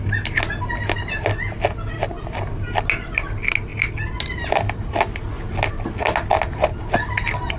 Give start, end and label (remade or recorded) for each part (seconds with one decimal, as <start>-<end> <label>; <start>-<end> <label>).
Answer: 0.0-7.6 recorded